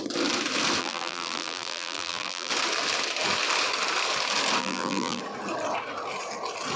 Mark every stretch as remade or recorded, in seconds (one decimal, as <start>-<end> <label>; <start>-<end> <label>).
0.0-0.8 recorded; 0.8-2.5 remade; 2.5-4.6 recorded; 4.6-5.2 remade; 5.2-6.8 recorded